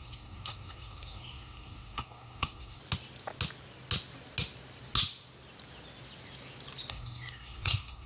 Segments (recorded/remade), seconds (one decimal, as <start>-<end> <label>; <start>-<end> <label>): 0.0-2.8 remade; 2.8-6.9 recorded; 6.9-8.1 remade